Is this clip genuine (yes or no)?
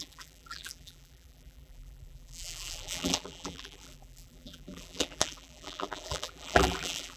no